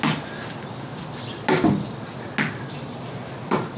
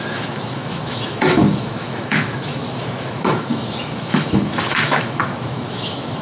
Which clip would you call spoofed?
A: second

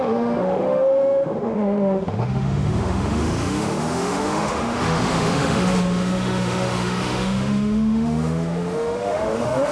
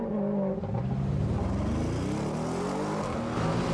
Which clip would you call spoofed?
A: first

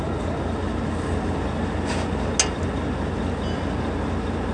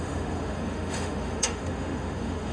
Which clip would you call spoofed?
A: second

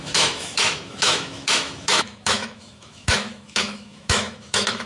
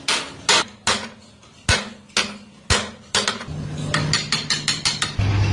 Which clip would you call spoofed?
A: first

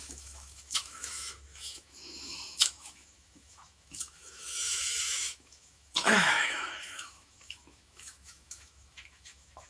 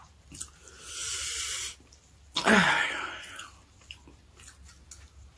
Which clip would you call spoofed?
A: first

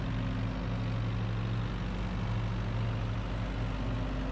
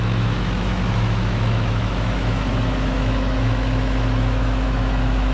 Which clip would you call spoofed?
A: second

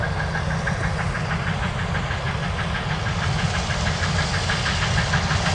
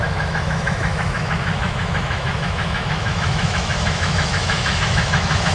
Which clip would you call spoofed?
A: second